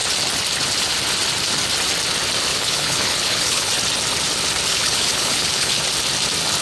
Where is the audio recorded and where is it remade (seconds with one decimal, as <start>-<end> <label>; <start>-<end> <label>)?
0.0-2.5 recorded; 2.5-3.7 remade; 3.7-4.7 recorded; 4.7-5.8 remade; 5.8-6.6 recorded